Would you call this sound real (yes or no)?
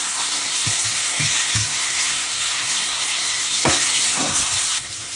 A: no